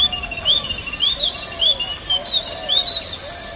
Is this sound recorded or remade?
recorded